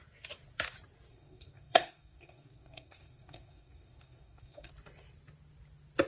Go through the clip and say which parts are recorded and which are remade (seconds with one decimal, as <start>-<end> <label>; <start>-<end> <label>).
0.0-1.1 recorded; 1.1-4.7 remade; 4.7-6.1 recorded